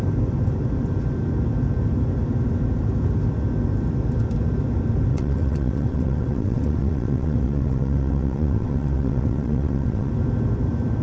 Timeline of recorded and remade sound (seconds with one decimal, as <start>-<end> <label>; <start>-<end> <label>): 0.0-5.1 recorded; 5.1-10.1 remade; 10.1-11.0 recorded